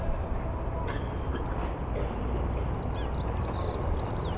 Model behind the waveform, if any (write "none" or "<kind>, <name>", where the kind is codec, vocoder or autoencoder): none